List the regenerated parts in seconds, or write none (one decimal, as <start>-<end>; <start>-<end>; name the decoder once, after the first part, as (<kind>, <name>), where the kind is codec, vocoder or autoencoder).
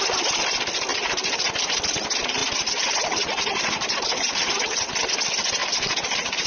0.9-1.8 (vocoder, BigVGAN v2); 2.4-4.9; 5.6-6.5